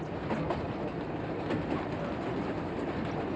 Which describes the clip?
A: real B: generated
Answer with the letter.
A